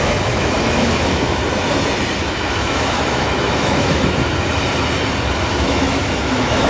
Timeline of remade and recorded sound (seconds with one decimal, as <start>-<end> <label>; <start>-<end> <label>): 0.0-1.4 remade; 1.4-2.3 recorded; 2.3-4.2 remade; 4.2-5.5 recorded; 5.5-6.7 remade